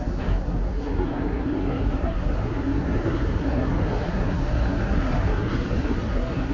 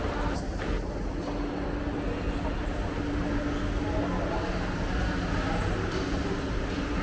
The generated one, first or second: first